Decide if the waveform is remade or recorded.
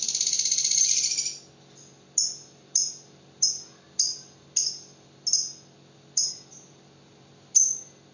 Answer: recorded